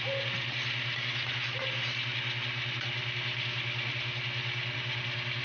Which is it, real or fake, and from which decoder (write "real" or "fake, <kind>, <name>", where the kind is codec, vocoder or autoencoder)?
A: real